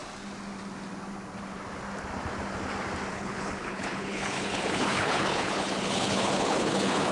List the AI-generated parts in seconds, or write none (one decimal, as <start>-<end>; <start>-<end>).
3.1-7.1